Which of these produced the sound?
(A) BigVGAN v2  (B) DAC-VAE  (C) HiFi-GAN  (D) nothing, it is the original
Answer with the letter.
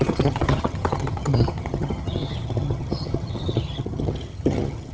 C